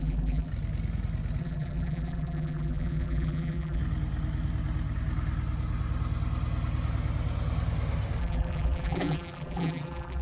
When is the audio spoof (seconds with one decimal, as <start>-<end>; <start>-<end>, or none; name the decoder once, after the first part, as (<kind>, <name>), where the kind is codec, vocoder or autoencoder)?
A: 0.0-0.5 (vocoder, BigVGAN v2); 1.4-3.8; 8.2-10.2